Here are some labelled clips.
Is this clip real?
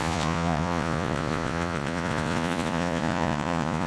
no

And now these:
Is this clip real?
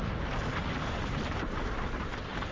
no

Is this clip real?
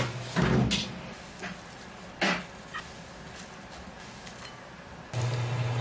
yes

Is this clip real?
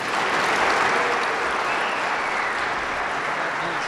yes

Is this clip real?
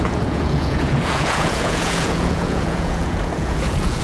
no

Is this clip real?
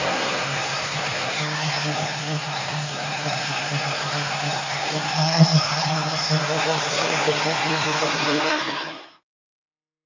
no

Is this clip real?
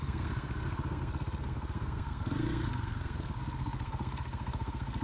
no